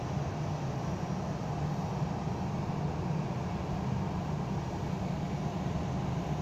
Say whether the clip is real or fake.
real